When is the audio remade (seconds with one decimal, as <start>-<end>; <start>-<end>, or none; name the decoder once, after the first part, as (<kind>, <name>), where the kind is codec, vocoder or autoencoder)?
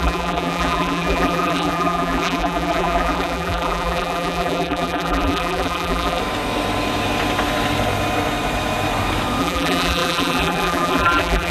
0.0-6.2 (vocoder, BigVGAN v2); 9.4-11.5